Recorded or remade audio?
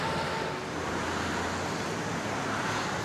recorded